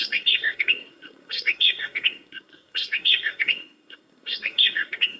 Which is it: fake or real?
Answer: fake